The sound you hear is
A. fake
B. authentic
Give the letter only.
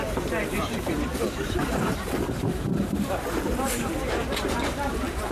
A